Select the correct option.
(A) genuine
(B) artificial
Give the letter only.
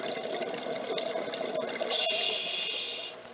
A